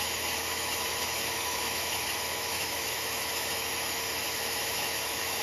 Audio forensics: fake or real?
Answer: fake